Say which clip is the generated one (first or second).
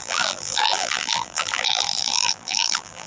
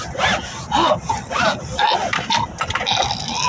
first